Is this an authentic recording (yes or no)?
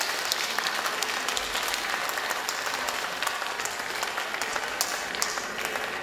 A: yes